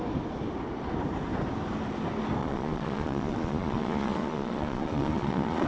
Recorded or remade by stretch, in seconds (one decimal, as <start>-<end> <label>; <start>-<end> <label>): 0.0-2.4 recorded; 2.4-5.7 remade